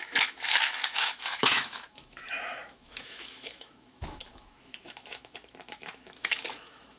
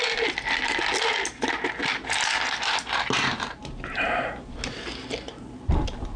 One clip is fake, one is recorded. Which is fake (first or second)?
first